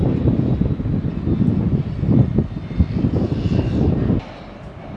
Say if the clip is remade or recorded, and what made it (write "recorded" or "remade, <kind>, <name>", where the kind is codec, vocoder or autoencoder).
recorded